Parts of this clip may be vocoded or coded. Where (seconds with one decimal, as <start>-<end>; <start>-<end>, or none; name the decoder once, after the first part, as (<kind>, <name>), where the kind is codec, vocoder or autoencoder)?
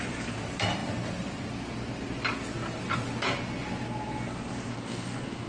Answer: 4.7-5.5 (codec, DAC)